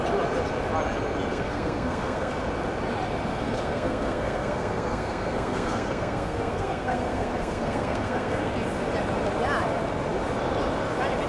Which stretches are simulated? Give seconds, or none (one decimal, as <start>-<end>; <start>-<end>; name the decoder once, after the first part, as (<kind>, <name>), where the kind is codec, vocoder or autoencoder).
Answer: 1.3-2.3 (codec, SNAC); 3.3-8.5